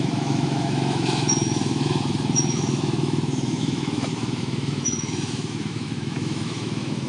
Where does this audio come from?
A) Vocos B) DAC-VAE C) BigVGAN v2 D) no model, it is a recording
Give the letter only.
B